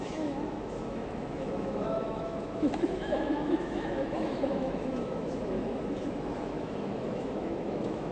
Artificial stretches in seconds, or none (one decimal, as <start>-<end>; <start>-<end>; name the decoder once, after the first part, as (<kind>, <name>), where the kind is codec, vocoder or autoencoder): 0.0-8.1 (autoencoder, DAC-VAE)